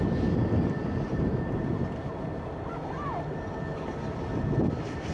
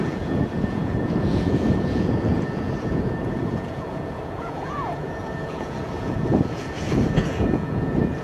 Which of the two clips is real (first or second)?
first